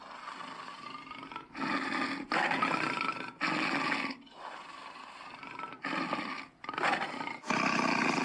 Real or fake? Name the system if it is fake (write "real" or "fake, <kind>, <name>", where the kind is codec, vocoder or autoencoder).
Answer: real